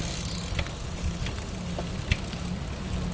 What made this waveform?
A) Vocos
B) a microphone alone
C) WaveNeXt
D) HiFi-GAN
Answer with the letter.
B